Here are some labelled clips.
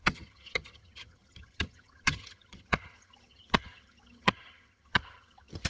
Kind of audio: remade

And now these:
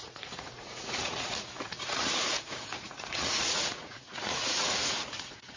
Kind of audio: remade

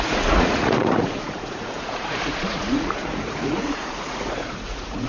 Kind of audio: remade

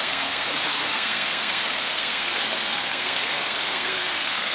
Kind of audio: remade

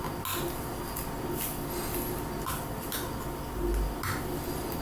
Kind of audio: recorded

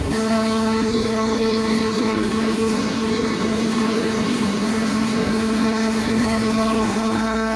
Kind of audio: remade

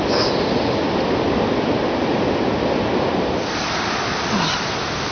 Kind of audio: recorded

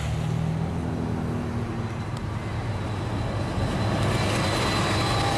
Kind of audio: recorded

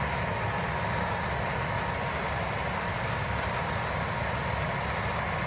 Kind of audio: recorded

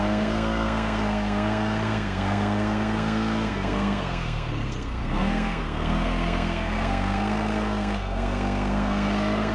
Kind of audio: remade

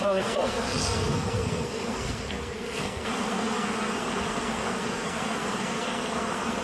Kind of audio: remade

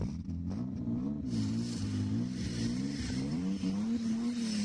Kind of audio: recorded